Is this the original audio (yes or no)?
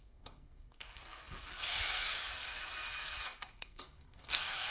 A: no